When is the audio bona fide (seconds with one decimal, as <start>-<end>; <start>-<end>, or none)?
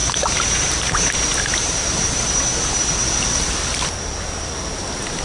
2.3-3.0